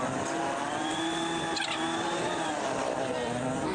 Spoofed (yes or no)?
no